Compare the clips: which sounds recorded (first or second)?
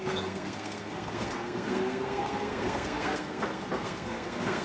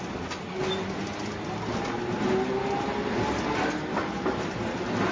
second